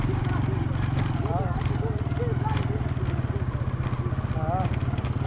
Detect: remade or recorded recorded